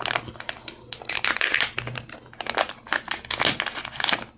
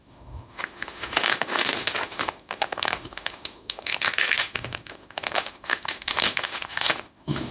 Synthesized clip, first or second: second